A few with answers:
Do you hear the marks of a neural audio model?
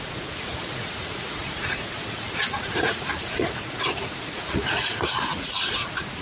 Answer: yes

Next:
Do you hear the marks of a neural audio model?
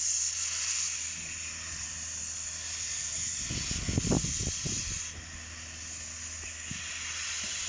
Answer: no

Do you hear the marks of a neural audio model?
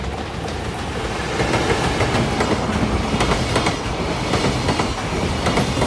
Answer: no